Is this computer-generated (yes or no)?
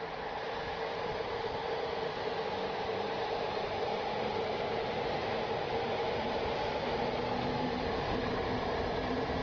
yes